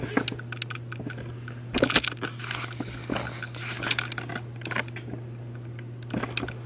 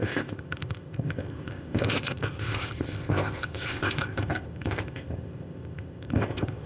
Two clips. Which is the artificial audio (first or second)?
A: second